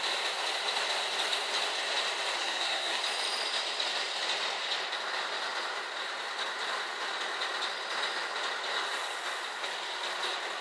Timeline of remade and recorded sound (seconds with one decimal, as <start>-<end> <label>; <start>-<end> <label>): 0.0-2.4 recorded; 2.4-3.0 remade; 3.0-10.6 recorded